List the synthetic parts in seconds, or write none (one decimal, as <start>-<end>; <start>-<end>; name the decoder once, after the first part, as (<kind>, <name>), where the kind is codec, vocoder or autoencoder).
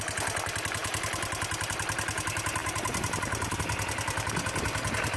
none